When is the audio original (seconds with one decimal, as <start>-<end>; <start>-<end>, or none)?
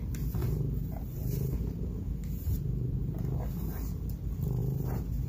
0.0-0.4; 3.4-4.6